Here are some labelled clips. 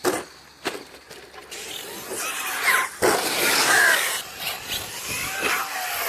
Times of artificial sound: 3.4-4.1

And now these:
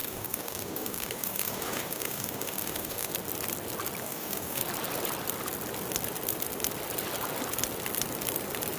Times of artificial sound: 0.0-3.1; 4.0-4.6

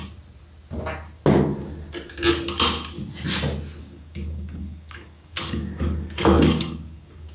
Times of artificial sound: 3.8-7.3

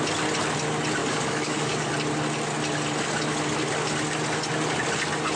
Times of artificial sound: 1.0-1.9

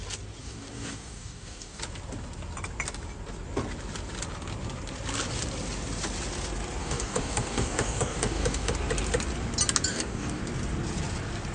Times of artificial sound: 0.4-1.8; 6.8-8.7; 9.9-10.4